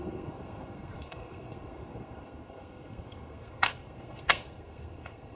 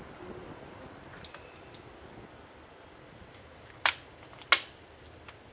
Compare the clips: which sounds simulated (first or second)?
first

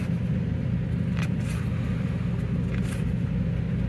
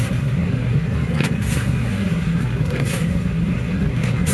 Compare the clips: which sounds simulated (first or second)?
second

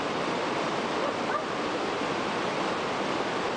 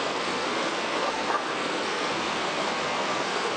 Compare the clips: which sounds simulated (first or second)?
second